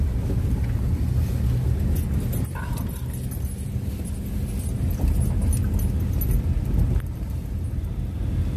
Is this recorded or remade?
recorded